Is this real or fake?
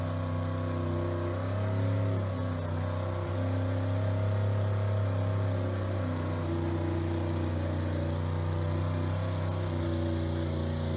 real